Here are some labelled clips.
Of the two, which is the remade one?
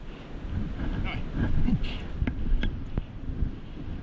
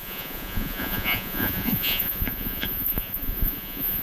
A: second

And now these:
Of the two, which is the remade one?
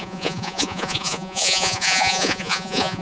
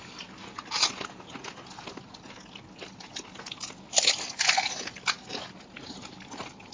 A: first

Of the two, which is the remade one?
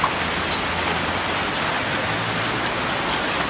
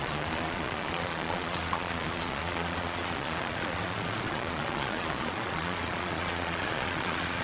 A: second